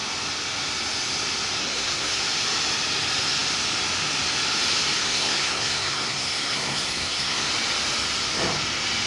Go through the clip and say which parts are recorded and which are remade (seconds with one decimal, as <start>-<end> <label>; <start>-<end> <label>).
0.0-1.6 recorded; 1.6-2.2 remade; 2.2-5.0 recorded; 5.0-7.5 remade; 7.5-9.1 recorded